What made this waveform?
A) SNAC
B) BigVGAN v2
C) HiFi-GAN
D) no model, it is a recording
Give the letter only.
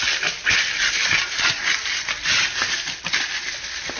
D